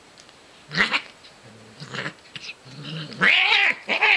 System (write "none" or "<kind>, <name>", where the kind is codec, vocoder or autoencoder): vocoder, BigVGAN v2